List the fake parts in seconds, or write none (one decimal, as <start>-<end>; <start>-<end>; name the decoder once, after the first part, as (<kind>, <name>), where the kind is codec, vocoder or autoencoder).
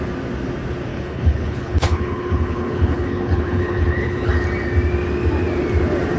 0.9-4.3 (codec, HILCodec)